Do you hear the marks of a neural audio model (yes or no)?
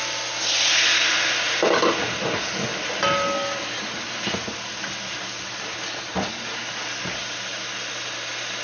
no